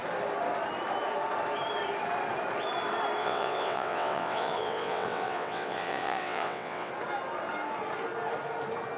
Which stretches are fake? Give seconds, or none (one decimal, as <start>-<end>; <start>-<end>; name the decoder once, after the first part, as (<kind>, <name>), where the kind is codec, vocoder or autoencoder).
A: 3.2-6.9 (vocoder, WaveNeXt)